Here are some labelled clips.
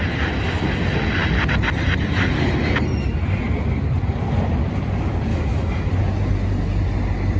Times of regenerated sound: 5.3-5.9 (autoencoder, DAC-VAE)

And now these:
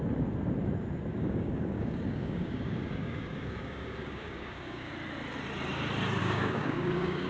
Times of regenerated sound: 1.1-4.9 (codec, DAC); 6.2-7.3

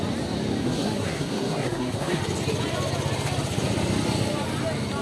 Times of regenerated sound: 0.6-2.2 (codec, SNAC)

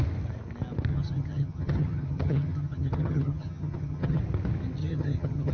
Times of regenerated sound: 0.9-4.2 (vocoder, HiFi-GAN); 4.8-5.5

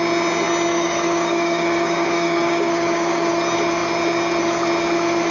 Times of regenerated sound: 0.7-3.3 (codec, DAC)

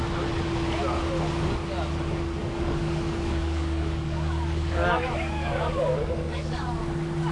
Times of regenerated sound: 2.4-6.8 (codec, DAC)